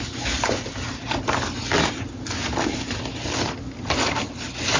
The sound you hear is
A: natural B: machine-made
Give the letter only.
A